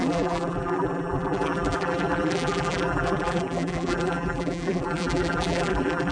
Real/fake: fake